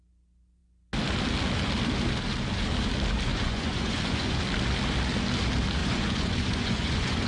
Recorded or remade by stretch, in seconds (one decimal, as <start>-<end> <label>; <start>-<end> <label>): 0.0-3.3 recorded; 3.3-4.4 remade; 4.4-5.8 recorded; 5.8-7.3 remade